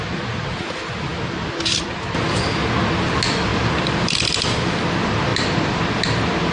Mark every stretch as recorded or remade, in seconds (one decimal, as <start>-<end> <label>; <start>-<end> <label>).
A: 0.0-3.5 recorded; 3.5-4.8 remade; 4.8-5.3 recorded; 5.3-5.8 remade; 5.8-6.5 recorded